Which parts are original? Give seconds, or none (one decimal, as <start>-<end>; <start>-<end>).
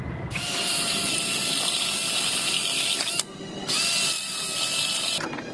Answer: 2.0-5.5